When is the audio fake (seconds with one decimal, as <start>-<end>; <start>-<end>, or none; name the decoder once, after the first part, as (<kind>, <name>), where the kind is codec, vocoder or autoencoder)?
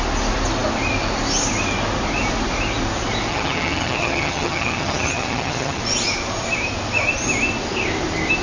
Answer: 3.3-5.8 (vocoder, HiFi-GAN)